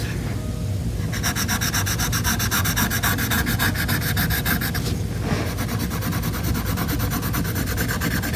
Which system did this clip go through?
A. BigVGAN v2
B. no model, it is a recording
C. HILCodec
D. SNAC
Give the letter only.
B